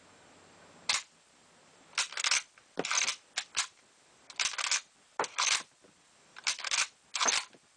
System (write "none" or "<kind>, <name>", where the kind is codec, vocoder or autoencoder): none